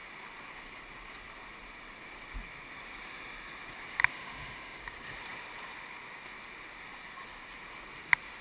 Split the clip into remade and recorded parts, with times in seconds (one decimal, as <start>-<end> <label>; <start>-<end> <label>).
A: 0.0-4.1 recorded; 4.1-4.8 remade; 4.8-8.4 recorded

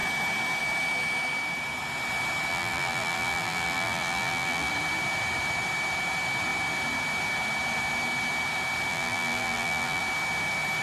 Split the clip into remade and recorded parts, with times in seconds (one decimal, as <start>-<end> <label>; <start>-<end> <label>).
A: 0.0-2.5 recorded; 2.5-4.7 remade; 4.7-8.9 recorded; 8.9-10.0 remade; 10.0-10.8 recorded